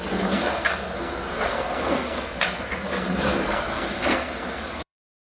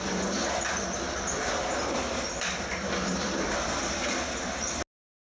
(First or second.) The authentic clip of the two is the second